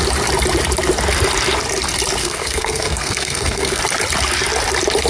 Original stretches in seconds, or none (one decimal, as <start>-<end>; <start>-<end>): 0.0-2.2; 3.8-5.1